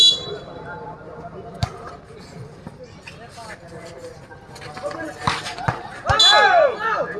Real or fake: real